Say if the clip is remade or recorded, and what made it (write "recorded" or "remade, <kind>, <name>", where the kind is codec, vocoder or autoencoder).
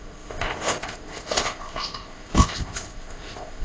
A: remade, codec, ZipCodec